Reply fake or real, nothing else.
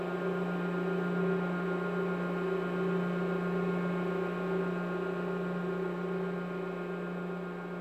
real